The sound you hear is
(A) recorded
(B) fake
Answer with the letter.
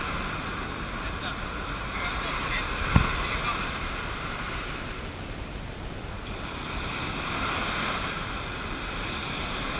A